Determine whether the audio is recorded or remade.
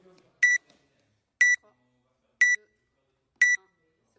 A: recorded